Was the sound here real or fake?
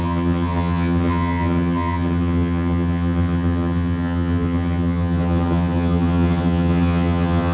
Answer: fake